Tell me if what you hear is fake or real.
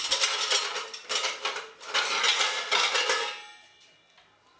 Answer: real